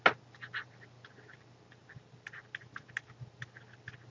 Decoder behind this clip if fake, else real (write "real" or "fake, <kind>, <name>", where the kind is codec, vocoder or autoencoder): real